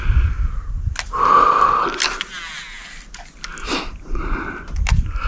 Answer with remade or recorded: recorded